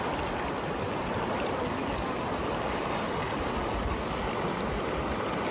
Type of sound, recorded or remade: recorded